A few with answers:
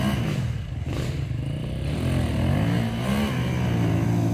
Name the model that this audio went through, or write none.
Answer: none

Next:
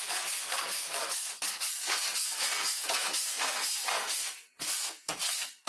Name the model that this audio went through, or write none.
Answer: codec, SNAC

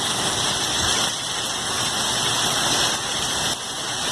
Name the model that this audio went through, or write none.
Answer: none